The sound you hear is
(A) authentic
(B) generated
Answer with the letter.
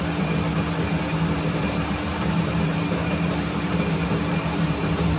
B